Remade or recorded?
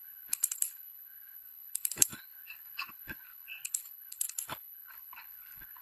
remade